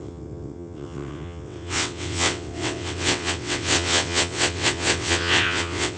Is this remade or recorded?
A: remade